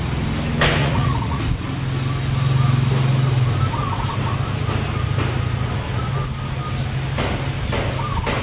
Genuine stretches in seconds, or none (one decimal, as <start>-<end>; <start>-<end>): 0.0-0.8; 1.4-8.4